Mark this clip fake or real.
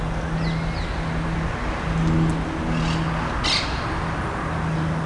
real